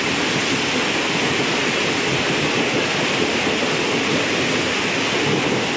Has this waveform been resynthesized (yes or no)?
no